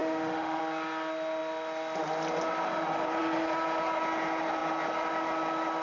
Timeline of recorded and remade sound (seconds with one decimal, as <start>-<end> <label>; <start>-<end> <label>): 0.0-0.6 remade; 0.6-5.8 recorded